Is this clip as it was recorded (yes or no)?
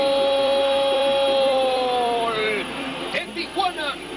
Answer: no